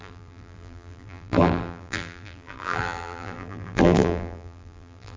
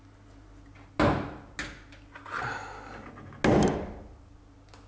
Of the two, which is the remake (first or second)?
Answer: first